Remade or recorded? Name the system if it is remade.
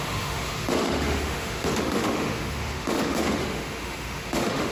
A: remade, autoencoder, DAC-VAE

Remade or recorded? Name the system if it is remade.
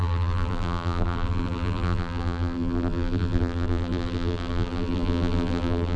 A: remade, vocoder, BigVGAN v2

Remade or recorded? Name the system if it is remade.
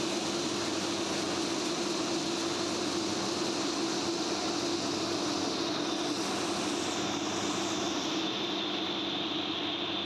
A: recorded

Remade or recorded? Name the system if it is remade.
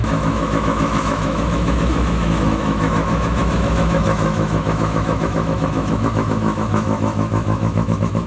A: remade, autoencoder, DAC-VAE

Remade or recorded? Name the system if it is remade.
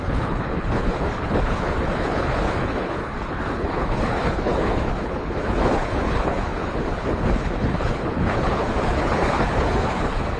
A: remade, codec, HILCodec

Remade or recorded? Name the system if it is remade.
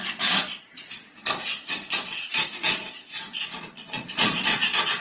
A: remade, vocoder, Vocos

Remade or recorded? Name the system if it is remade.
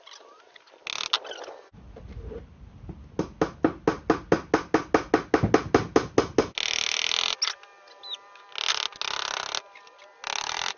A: recorded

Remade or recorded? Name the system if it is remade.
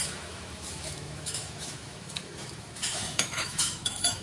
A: remade, autoencoder, DAC-VAE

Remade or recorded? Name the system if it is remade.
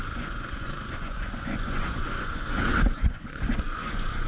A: remade, vocoder, Vocos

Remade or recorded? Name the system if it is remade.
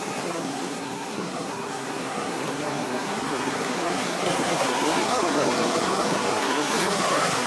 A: remade, codec, SNAC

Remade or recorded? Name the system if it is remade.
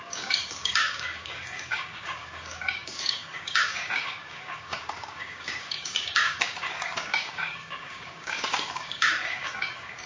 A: remade, codec, DAC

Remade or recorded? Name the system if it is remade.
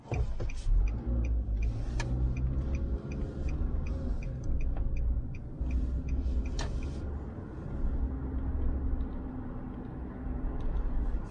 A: recorded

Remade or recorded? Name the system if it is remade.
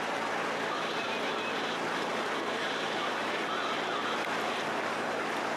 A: recorded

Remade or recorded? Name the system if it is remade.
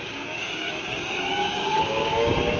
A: remade, codec, DAC